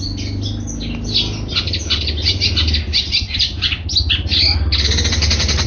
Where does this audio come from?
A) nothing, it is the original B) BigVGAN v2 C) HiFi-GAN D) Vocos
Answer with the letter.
A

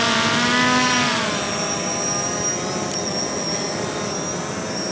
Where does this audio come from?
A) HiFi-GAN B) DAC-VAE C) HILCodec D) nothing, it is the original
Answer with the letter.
D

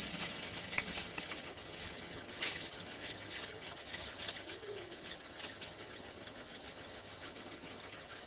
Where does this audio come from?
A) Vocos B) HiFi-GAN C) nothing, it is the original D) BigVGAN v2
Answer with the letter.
B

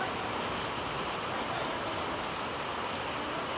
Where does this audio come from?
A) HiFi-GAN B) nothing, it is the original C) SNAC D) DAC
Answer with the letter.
B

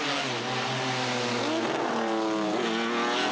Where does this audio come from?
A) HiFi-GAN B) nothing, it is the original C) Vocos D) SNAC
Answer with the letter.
B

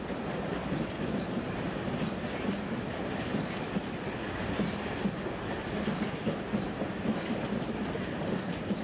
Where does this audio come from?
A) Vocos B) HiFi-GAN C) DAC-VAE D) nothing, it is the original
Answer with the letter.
D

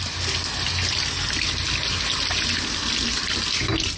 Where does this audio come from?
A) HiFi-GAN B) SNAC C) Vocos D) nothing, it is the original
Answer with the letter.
D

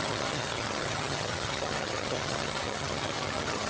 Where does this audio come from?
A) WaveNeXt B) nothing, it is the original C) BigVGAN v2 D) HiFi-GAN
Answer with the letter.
D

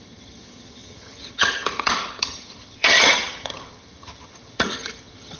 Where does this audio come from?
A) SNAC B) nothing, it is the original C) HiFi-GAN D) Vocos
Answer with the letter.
C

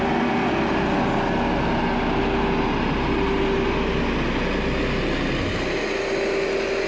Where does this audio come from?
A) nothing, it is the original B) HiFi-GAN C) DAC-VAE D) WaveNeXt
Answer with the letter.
A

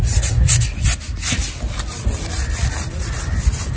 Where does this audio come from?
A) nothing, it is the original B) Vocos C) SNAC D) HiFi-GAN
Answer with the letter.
A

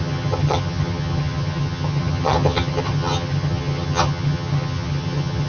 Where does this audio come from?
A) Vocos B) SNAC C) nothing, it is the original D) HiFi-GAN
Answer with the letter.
D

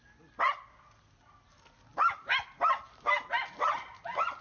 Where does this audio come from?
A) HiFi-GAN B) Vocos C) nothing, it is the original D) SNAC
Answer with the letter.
C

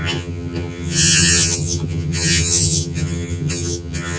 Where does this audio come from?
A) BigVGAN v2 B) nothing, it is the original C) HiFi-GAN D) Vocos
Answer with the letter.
C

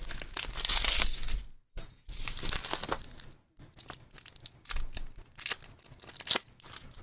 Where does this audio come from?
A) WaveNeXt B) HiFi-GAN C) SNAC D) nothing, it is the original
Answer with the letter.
D